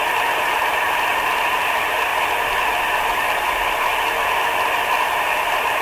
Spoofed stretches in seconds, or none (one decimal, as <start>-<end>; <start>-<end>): none